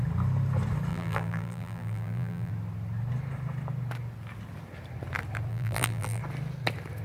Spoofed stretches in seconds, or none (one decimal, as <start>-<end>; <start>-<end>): 0.9-2.5; 5.5-6.2

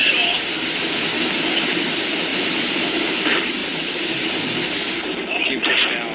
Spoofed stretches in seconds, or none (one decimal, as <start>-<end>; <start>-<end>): 2.3-3.2; 3.6-4.1

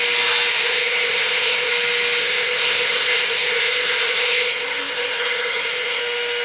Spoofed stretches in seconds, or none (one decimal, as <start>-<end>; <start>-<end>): 0.5-1.7; 2.2-6.0

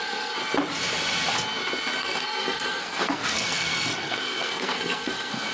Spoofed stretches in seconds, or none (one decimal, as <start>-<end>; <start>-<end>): 0.0-0.4; 2.0-5.5

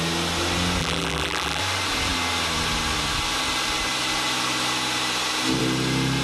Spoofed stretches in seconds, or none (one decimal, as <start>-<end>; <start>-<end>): 0.8-1.6